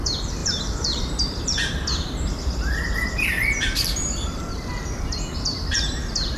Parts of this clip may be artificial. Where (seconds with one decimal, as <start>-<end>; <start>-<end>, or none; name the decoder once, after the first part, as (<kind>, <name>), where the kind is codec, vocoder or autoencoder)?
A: 0.0-6.4 (vocoder, BigVGAN v2)